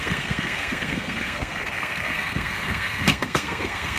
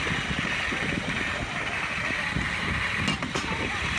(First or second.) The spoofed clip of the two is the first